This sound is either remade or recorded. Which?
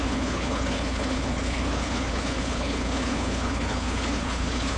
remade